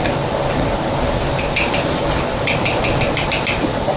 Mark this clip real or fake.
real